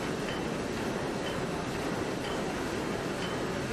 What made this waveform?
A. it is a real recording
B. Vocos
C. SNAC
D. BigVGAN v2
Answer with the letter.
A